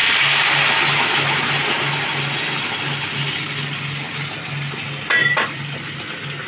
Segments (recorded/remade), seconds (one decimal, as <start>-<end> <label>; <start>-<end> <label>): 0.0-5.2 recorded; 5.2-6.0 remade; 6.0-6.5 recorded